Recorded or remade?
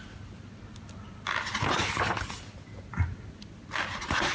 recorded